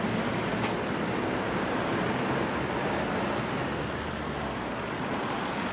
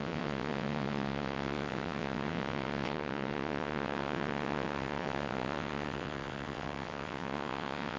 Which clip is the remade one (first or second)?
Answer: second